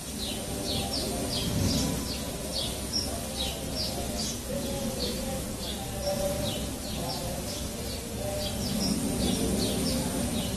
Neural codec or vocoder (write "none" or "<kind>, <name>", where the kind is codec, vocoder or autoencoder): none